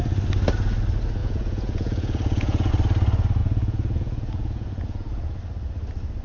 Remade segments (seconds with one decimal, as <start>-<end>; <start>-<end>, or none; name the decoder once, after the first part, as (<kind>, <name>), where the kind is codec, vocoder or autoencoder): 1.2-2.7 (vocoder, Vocos); 3.4-5.4